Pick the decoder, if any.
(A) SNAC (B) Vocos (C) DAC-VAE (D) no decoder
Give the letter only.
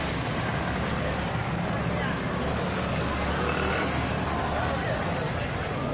D